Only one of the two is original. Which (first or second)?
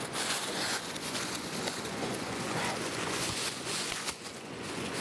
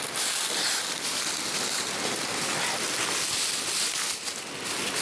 second